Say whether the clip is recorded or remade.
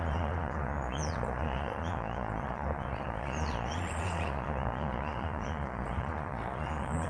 remade